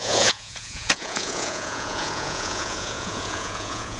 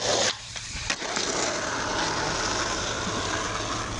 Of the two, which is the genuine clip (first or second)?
second